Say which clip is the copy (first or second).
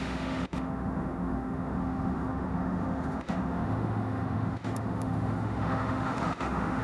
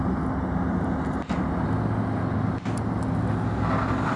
first